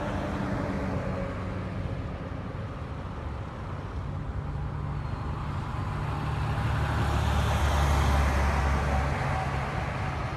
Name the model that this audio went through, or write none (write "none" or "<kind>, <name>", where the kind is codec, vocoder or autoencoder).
none